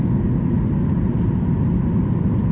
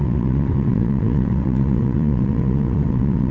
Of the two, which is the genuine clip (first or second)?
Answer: first